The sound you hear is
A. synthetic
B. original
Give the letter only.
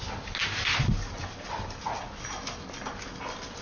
B